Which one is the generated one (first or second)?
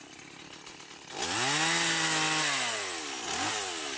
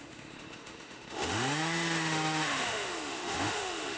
second